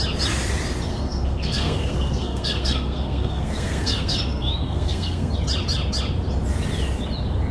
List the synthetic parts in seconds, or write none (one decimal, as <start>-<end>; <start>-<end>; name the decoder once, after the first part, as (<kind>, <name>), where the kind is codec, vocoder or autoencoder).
0.9-5.3 (codec, SNAC)